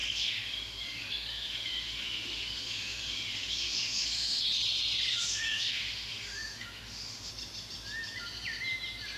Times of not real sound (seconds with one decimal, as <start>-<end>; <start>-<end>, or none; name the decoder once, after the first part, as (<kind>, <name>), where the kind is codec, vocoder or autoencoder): 0.0-4.4 (autoencoder, DAC-VAE); 5.1-7.3